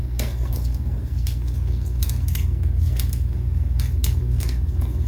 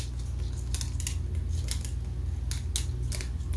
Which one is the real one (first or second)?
second